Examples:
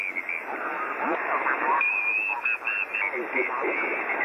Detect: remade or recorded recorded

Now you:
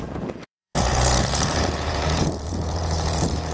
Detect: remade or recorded remade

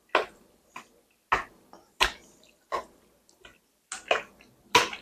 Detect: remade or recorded recorded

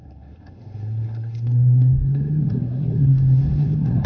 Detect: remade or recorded remade